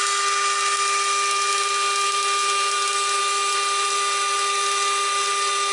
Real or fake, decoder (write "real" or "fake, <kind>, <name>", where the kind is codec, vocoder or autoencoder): real